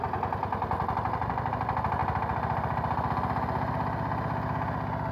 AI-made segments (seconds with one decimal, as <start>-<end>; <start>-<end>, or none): none